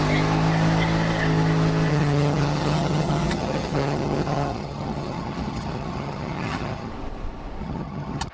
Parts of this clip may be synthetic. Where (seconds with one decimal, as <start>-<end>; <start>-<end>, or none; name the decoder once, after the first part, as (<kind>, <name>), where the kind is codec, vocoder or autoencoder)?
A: 1.9-6.9 (vocoder, HiFi-GAN); 7.6-8.3